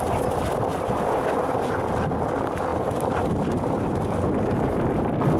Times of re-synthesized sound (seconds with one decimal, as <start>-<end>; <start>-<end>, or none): 2.7-3.3